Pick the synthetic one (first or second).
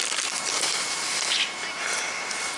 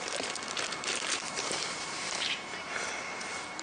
second